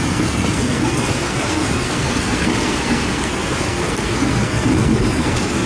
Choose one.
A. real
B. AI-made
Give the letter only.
B